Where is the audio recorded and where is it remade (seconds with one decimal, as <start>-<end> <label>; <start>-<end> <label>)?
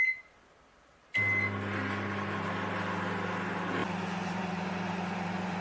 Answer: 0.0-3.8 recorded; 3.8-5.6 remade